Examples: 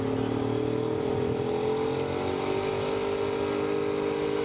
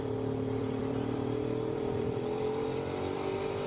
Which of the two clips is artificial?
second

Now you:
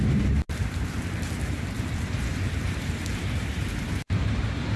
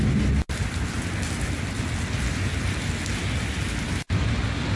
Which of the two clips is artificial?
first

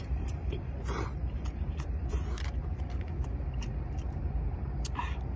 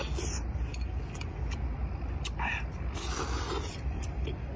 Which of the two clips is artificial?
first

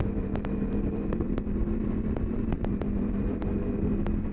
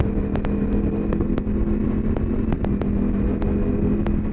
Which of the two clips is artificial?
first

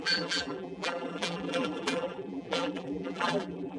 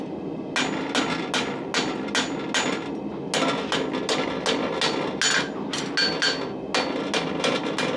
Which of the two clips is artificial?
first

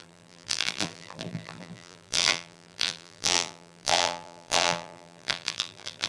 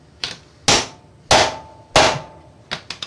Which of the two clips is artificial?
first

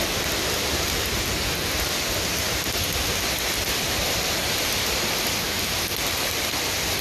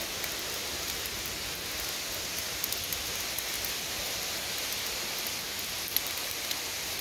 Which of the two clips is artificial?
first